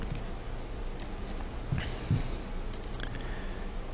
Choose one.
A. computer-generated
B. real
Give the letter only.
B